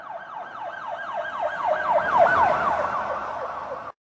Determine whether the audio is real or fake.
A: real